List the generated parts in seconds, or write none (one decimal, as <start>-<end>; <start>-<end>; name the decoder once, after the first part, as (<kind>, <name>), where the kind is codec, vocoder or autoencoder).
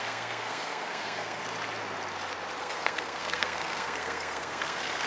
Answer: 0.0-1.4 (codec, SNAC); 2.6-5.1